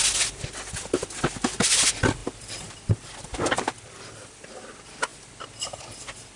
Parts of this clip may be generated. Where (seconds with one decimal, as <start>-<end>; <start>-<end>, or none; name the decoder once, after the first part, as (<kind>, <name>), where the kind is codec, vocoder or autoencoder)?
2.2-4.5 (vocoder, BigVGAN v2); 5.1-5.8